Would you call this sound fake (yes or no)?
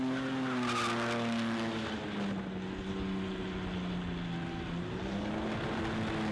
no